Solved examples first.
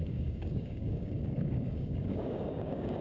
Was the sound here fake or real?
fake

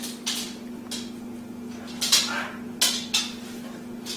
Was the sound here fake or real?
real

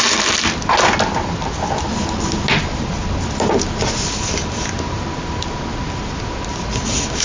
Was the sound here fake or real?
real